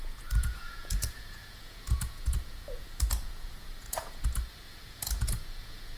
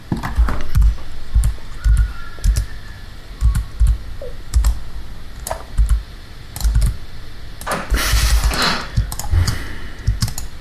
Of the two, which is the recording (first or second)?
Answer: second